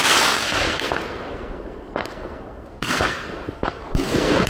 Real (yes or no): no